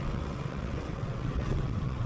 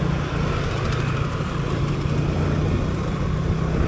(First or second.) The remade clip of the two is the first